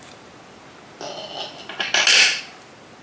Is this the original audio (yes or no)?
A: yes